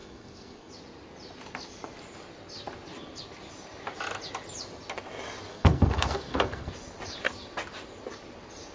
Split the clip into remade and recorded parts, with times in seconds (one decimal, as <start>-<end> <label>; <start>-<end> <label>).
0.0-0.7 remade; 0.7-5.5 recorded; 5.5-6.7 remade; 6.7-8.7 recorded